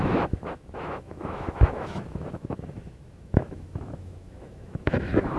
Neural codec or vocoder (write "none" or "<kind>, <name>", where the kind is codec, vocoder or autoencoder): autoencoder, DAC-VAE